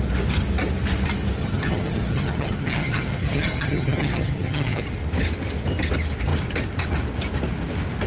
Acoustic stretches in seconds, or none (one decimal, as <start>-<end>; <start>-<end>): 0.0-1.4; 4.8-8.1